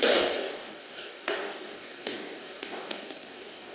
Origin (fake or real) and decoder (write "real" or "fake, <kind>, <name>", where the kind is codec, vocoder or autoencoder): fake, codec, DAC